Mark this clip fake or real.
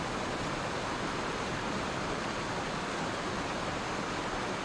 real